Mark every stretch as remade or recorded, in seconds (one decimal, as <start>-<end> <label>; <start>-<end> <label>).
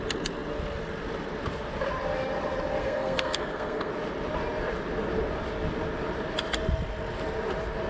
0.0-2.8 recorded; 2.8-3.9 remade; 3.9-7.9 recorded